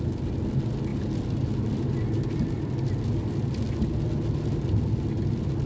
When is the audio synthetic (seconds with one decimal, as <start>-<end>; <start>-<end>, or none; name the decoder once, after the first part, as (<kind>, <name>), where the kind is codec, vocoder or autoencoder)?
none